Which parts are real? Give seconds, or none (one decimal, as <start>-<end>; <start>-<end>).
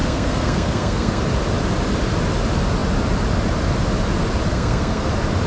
1.2-4.5; 5.1-5.5